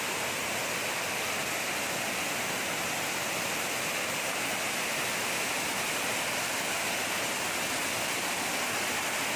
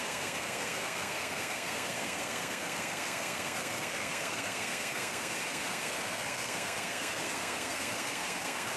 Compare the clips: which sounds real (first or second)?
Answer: first